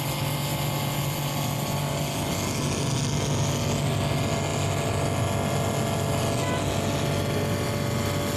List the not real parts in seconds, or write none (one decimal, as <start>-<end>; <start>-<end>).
none